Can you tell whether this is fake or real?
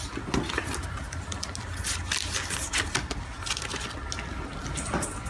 real